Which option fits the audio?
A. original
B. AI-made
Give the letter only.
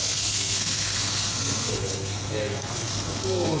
B